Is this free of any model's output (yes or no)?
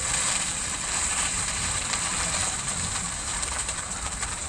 no